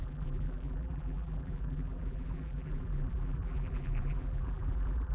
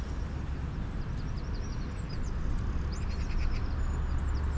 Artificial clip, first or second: first